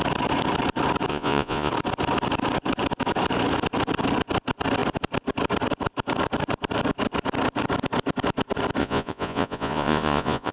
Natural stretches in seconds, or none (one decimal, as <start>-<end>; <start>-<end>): 0.0-1.1; 1.7-8.8